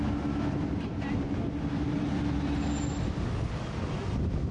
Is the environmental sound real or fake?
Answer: real